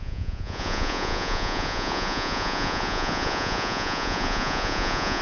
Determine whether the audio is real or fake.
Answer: fake